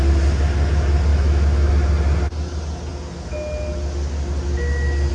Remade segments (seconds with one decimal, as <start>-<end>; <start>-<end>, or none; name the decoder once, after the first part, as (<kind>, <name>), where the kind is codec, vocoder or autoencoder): 1.1-1.7 (autoencoder, DAC-VAE)